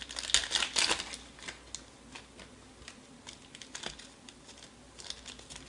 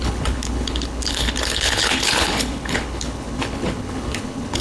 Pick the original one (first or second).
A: first